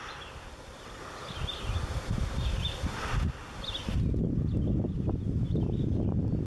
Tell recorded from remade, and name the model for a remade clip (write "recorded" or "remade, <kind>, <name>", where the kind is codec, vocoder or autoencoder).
recorded